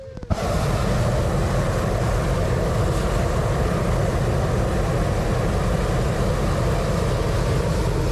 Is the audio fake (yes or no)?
no